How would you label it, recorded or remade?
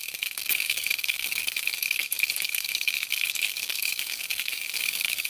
remade